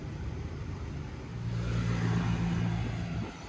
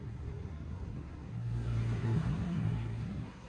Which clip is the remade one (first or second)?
second